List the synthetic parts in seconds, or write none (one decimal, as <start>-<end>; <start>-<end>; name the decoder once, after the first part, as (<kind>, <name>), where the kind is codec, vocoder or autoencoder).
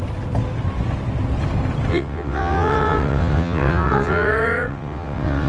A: 1.9-5.5 (vocoder, WaveNeXt)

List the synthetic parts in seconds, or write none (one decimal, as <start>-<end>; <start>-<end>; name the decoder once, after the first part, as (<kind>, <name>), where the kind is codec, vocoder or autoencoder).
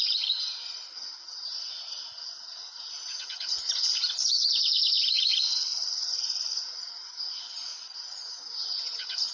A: none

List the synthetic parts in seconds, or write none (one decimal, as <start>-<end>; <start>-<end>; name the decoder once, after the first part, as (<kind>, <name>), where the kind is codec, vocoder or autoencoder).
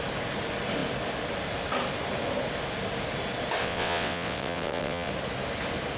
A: 3.6-5.1 (vocoder, WaveNeXt)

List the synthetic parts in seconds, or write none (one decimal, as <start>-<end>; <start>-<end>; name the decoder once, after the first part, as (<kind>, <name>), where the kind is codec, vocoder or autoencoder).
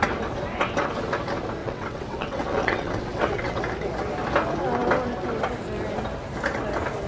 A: 1.6-3.6 (vocoder, WaveNeXt)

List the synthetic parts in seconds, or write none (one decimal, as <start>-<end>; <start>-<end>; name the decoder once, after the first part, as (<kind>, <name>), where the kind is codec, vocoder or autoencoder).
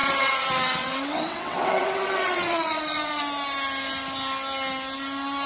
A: 0.0-3.2 (vocoder, WaveNeXt)